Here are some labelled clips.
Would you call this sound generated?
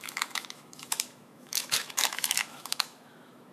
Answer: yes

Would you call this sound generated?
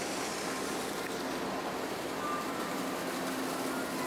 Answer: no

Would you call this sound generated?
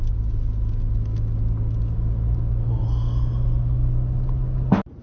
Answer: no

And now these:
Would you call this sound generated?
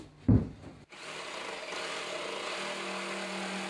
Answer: no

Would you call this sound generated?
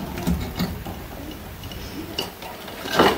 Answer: no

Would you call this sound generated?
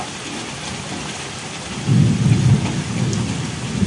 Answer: no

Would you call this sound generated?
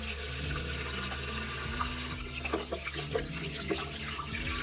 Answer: no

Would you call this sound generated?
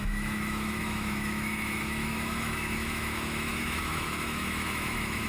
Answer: yes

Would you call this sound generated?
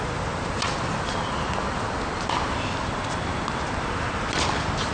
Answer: no